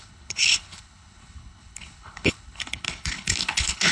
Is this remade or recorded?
remade